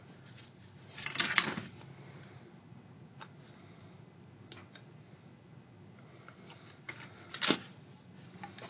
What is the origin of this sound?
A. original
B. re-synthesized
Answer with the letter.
A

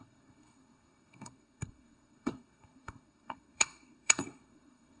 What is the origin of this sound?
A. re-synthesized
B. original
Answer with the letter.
A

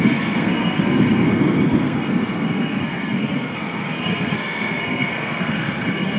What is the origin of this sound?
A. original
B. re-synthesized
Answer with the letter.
B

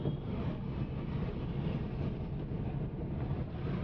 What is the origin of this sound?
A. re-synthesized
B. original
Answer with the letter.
B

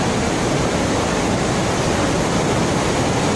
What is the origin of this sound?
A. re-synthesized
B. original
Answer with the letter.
B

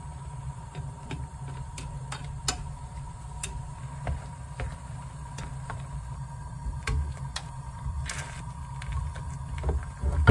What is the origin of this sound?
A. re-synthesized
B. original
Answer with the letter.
B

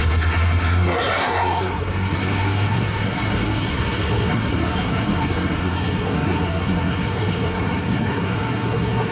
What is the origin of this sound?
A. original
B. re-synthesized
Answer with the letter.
B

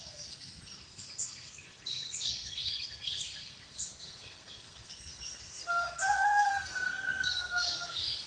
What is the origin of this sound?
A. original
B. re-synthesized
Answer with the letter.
B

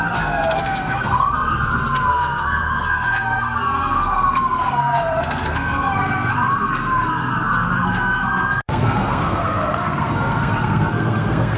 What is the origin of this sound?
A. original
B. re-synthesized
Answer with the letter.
B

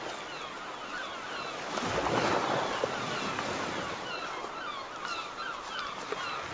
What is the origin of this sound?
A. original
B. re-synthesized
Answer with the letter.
A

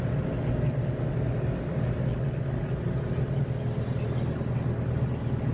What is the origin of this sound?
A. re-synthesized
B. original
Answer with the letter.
B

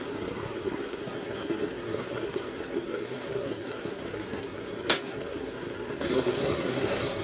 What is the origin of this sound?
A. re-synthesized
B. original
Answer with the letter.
A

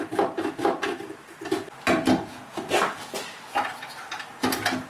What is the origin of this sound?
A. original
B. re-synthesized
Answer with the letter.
A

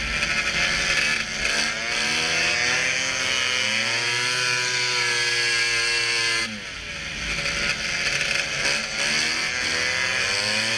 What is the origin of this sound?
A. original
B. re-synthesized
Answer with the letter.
A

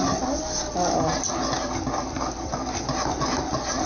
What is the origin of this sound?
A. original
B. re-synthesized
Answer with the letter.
A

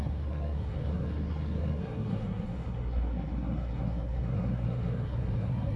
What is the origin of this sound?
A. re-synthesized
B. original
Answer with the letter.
A